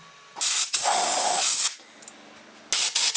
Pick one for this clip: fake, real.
real